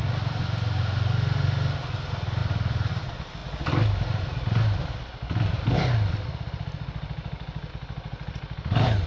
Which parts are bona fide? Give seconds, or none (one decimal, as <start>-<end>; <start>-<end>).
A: 0.0-2.4; 2.9-9.1